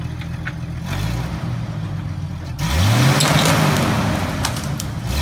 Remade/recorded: recorded